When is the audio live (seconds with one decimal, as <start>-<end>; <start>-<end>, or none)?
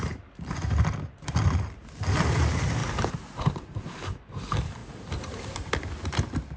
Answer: 0.0-6.6